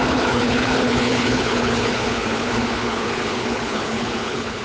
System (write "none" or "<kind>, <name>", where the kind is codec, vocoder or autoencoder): codec, HILCodec